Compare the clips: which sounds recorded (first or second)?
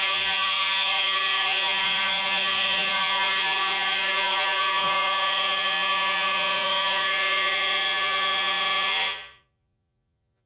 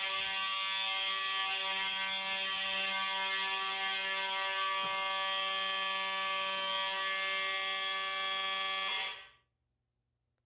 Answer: second